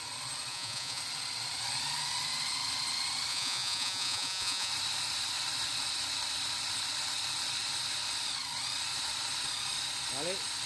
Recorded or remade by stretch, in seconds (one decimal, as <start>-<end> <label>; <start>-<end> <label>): 0.0-0.5 recorded; 0.5-1.0 remade; 1.0-3.3 recorded; 3.3-4.7 remade; 4.7-10.7 recorded